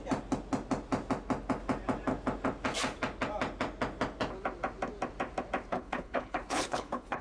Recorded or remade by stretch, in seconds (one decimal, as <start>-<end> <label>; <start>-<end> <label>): 0.0-5.7 recorded; 5.7-7.2 remade